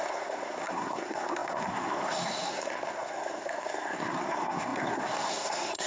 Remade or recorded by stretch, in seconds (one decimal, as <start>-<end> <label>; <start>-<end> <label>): 0.0-5.9 remade